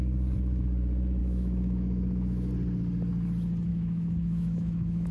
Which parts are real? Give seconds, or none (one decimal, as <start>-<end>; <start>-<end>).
0.0-1.2; 2.5-3.7